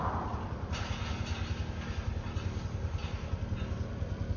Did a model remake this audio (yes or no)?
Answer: no